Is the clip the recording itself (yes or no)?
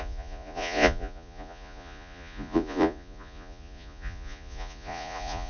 no